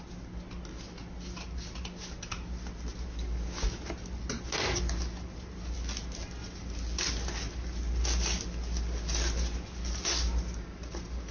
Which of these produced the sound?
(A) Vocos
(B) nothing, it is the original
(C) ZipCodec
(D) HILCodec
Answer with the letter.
B